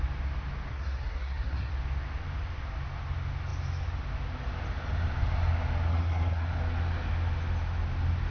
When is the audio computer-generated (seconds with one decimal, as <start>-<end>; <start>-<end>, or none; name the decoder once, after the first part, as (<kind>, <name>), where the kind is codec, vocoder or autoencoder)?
0.7-1.7 (codec, SNAC); 5.9-6.5